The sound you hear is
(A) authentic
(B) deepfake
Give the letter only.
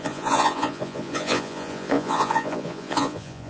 B